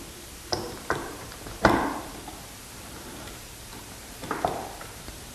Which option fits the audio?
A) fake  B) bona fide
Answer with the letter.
A